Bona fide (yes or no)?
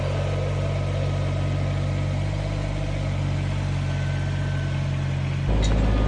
yes